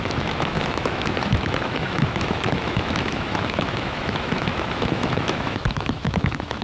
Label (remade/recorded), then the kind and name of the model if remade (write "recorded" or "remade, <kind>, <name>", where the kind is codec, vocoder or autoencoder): remade, autoencoder, DAC-VAE